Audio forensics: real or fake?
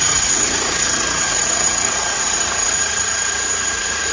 fake